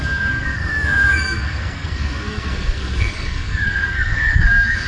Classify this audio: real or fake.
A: fake